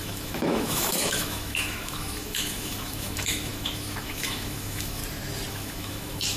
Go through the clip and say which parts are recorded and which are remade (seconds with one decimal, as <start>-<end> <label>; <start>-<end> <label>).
0.0-5.0 remade; 5.0-5.5 recorded; 5.5-6.4 remade